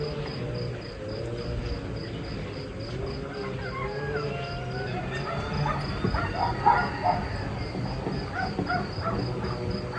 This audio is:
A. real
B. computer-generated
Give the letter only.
A